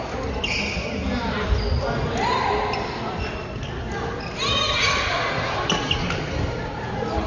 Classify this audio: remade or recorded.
recorded